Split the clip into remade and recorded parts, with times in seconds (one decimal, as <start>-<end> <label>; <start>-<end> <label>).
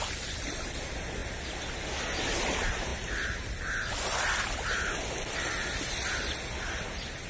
0.0-7.3 recorded